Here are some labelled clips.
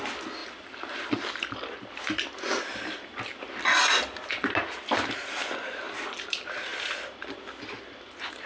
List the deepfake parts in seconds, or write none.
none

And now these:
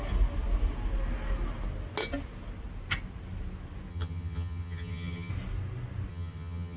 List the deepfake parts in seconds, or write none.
3.9-5.3 (vocoder, HiFi-GAN); 6.1-6.8

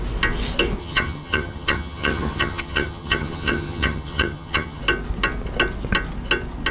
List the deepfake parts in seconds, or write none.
0.8-4.8 (vocoder, HiFi-GAN)

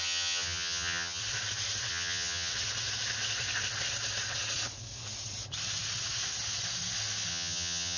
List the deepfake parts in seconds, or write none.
0.0-1.2 (vocoder, HiFi-GAN); 1.9-2.5; 7.3-8.0

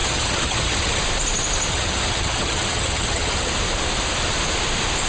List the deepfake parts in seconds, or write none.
0.0-1.0 (vocoder, HiFi-GAN); 1.7-3.5